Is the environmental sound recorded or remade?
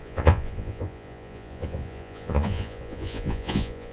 remade